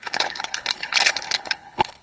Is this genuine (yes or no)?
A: no